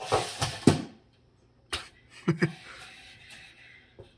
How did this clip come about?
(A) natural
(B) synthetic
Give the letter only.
A